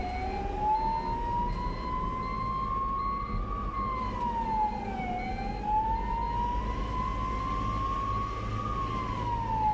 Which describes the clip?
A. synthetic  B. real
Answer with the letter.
B